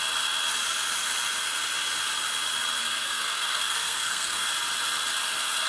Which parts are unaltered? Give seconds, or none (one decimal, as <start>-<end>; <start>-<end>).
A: 0.0-2.8; 4.5-5.7